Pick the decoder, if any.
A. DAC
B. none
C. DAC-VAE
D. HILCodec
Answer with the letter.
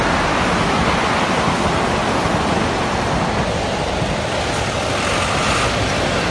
B